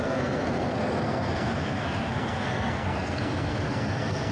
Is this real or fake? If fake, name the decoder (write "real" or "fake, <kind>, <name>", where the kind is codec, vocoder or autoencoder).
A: fake, codec, SNAC